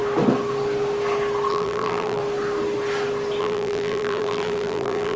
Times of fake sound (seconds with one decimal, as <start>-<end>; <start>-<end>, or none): 1.5-2.2; 3.4-5.2